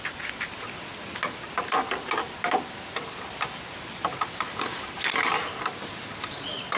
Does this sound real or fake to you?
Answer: real